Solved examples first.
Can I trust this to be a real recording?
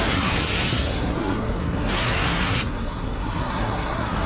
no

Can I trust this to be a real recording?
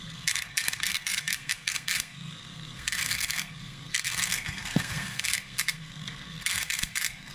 no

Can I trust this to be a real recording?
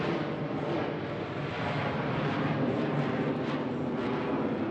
yes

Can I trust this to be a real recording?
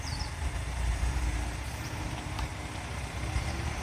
no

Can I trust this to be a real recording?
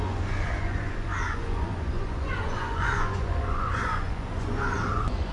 no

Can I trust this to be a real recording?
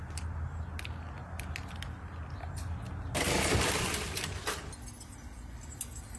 yes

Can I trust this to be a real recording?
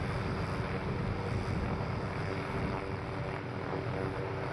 yes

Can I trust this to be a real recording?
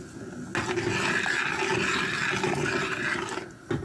yes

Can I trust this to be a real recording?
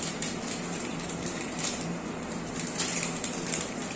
no